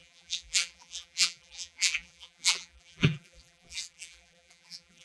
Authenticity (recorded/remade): remade